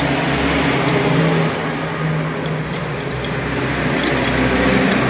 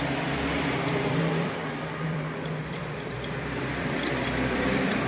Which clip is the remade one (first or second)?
second